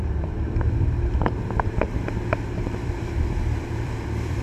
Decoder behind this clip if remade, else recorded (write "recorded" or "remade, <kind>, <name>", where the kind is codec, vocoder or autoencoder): remade, vocoder, BigVGAN v2